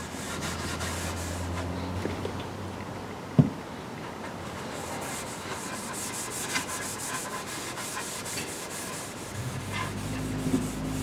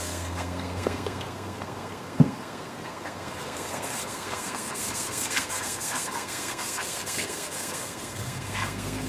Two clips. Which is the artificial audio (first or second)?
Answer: second